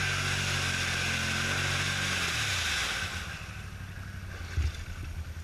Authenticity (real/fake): real